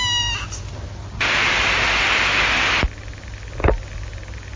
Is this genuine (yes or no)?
yes